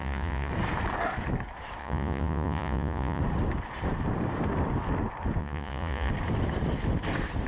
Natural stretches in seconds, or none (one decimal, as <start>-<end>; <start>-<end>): 0.5-1.8; 3.2-5.4; 6.1-7.5